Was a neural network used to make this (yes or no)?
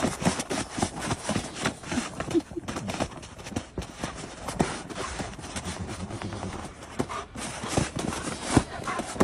yes